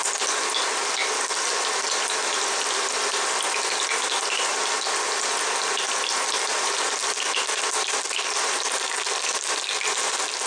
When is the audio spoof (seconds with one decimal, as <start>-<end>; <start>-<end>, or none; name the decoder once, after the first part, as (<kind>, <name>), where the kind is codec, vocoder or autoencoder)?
none